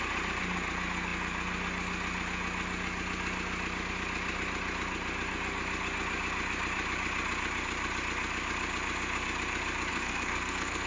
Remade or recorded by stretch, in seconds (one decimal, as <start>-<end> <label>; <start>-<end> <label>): 0.0-9.9 recorded; 9.9-10.9 remade